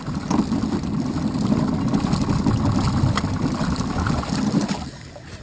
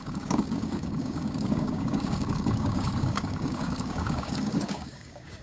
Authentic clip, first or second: first